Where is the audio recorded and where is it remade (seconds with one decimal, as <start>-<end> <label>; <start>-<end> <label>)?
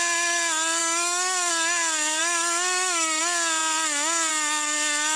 0.0-0.8 recorded; 0.8-1.5 remade; 1.5-2.2 recorded; 2.2-3.2 remade; 3.2-5.2 recorded